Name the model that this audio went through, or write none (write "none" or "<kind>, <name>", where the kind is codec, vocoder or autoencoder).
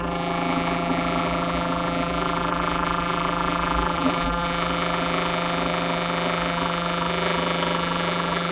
vocoder, BigVGAN v2